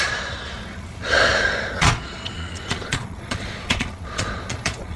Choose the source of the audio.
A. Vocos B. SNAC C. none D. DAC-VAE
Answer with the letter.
A